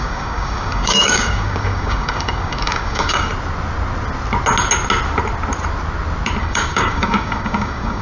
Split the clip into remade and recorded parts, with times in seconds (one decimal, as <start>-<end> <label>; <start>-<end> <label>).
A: 0.0-3.3 remade; 3.3-6.4 recorded; 6.4-8.0 remade